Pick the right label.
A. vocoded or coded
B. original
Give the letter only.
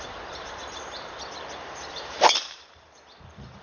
A